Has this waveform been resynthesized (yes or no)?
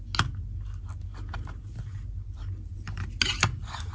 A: no